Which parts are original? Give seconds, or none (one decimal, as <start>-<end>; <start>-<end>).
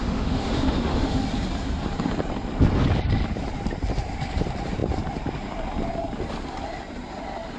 1.2-7.6